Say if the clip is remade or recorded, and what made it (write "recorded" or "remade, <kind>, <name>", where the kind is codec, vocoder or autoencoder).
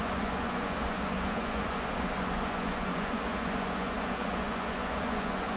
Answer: remade, vocoder, Vocos